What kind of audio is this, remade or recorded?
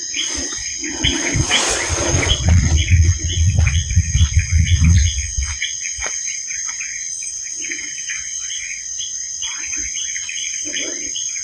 remade